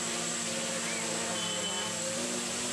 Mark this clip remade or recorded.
recorded